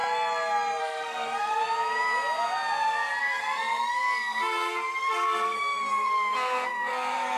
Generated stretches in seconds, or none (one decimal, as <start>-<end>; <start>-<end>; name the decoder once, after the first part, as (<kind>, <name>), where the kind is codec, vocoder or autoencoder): 0.8-1.6 (codec, SNAC); 3.2-7.4